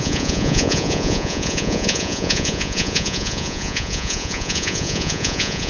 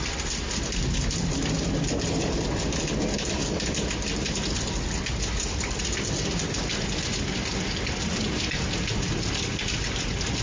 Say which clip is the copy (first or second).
first